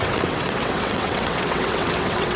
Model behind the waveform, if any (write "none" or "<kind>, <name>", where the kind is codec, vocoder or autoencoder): vocoder, WaveNeXt